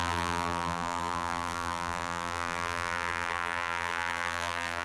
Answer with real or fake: fake